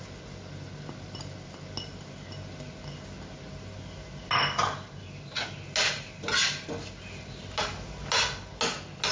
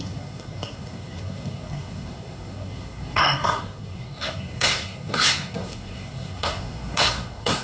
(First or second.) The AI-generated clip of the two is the second